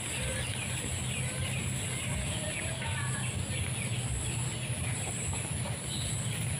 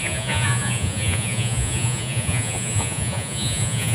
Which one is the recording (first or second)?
first